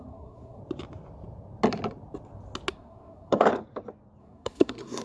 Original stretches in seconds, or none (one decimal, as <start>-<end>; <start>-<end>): 0.6-2.7; 3.5-4.2